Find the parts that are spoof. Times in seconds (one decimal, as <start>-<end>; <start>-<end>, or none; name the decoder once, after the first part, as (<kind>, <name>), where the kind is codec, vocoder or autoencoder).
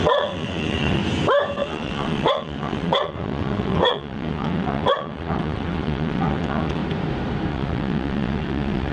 0.0-1.0 (vocoder, WaveNeXt); 1.6-6.8; 7.5-8.9